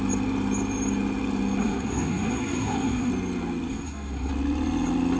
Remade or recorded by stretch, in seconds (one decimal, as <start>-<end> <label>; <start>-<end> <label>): 0.0-1.6 recorded; 1.6-3.1 remade; 3.1-3.7 recorded; 3.7-4.3 remade; 4.3-5.2 recorded